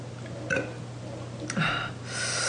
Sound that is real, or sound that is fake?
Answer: real